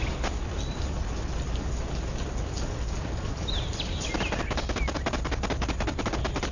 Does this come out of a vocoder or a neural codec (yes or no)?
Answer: no